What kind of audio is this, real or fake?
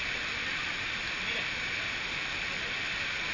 real